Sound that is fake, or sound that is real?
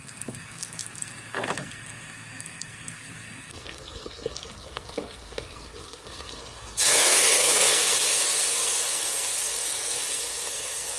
fake